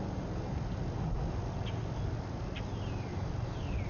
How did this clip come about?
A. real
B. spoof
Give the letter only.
A